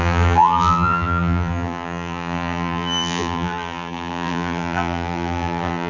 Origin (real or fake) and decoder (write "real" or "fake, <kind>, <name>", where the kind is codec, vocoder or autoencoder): fake, vocoder, BigVGAN v2